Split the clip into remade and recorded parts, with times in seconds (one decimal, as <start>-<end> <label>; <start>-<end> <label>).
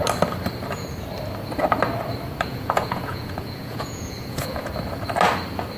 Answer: 0.0-2.5 recorded; 2.5-4.7 remade; 4.7-5.8 recorded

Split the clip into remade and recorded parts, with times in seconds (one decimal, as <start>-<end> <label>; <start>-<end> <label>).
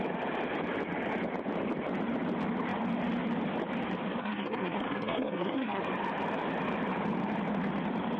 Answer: 0.0-4.2 recorded; 4.2-5.8 remade; 5.8-8.2 recorded